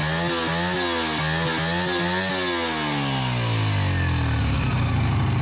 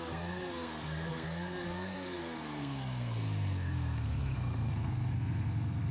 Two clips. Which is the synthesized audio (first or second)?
second